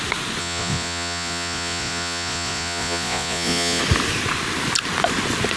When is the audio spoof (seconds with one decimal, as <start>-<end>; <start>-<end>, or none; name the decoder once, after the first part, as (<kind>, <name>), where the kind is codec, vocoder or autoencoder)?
0.4-3.8 (vocoder, Vocos)